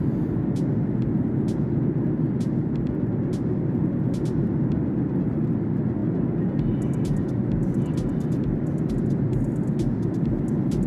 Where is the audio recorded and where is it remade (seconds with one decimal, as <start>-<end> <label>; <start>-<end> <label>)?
0.0-10.9 recorded